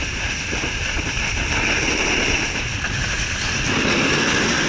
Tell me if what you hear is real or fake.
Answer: real